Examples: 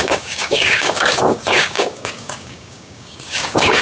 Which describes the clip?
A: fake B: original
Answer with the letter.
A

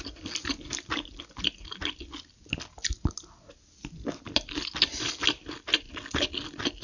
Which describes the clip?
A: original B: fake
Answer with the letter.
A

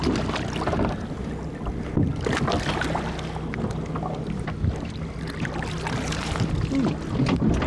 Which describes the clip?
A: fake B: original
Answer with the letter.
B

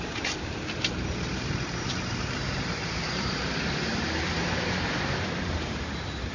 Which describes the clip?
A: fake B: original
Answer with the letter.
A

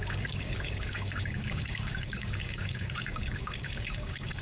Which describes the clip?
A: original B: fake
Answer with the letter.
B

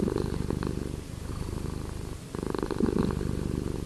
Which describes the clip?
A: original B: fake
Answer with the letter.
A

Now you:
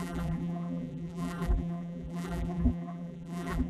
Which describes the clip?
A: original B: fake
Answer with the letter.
B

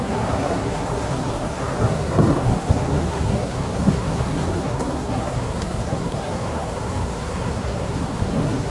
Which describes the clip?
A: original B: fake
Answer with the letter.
B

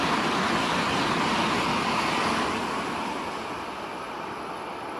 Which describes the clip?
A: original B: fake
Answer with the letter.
A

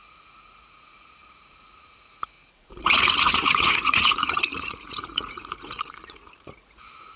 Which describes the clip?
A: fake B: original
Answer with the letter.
A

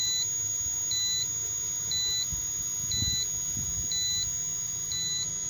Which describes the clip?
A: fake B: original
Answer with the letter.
B